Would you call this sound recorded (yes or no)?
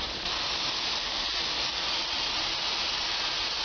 yes